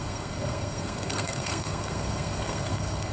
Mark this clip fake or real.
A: fake